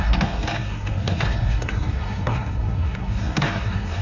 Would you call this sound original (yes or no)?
no